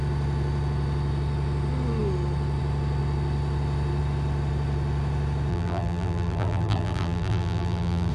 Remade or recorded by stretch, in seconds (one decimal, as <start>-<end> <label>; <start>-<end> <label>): 0.0-5.5 recorded; 5.5-8.1 remade